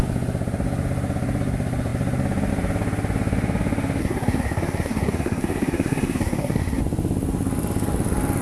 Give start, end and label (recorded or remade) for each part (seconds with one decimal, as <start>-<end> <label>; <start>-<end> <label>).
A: 0.0-4.0 recorded; 4.0-6.8 remade; 6.8-8.4 recorded